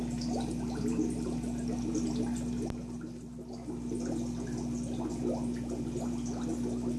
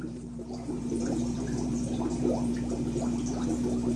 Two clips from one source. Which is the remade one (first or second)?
second